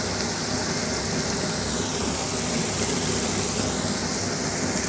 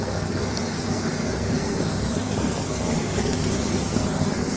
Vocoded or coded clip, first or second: second